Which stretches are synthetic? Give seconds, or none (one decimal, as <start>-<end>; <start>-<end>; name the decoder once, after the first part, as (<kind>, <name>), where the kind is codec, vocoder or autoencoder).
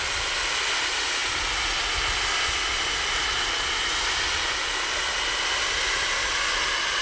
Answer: none